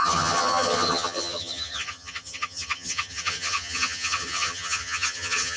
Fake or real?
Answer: fake